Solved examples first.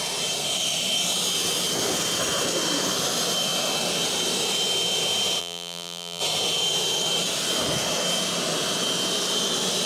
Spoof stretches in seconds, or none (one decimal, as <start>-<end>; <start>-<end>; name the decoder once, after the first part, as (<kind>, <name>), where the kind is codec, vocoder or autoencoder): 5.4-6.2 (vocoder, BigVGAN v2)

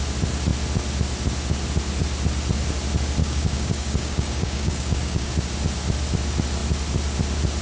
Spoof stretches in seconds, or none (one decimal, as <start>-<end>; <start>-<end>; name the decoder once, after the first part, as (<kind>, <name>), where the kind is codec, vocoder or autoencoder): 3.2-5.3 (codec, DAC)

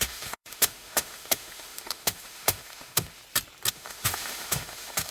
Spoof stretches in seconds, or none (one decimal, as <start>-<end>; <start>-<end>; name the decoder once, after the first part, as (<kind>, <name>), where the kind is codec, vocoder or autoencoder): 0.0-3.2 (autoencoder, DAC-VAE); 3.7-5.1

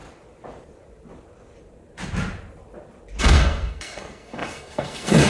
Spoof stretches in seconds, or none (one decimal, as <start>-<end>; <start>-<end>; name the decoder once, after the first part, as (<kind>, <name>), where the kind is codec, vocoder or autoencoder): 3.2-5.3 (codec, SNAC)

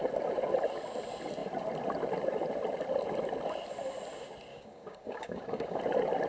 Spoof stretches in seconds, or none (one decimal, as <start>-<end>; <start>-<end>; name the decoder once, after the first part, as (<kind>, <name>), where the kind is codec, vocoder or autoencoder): 4.5-5.8 (codec, DAC)